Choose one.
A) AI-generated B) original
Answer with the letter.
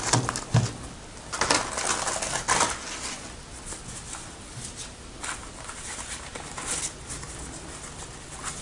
B